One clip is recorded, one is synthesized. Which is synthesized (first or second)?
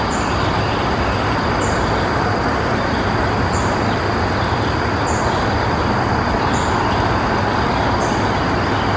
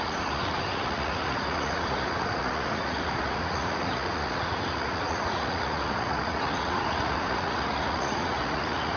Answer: second